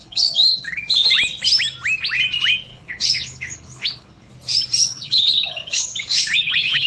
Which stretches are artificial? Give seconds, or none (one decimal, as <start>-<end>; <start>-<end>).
0.0-0.8; 2.7-4.3; 4.8-6.9